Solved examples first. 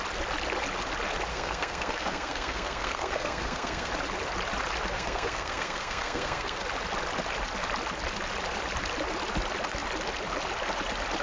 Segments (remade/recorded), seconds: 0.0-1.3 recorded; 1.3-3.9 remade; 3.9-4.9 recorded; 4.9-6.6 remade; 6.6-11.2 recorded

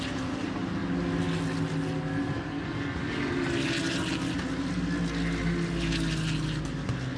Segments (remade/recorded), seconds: 0.0-7.2 recorded

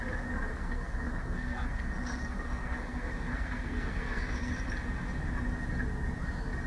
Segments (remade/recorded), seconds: 0.0-0.5 recorded; 0.5-4.5 remade; 4.5-6.7 recorded

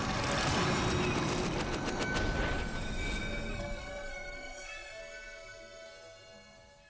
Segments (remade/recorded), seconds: 0.0-3.5 recorded; 3.5-5.0 remade; 5.0-6.9 recorded

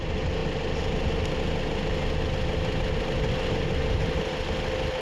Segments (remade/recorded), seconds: 0.0-5.0 recorded

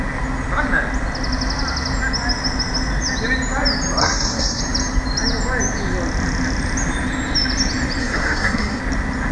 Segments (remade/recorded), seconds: 0.0-4.0 recorded; 4.0-4.6 remade; 4.6-8.0 recorded; 8.0-8.8 remade; 8.8-9.3 recorded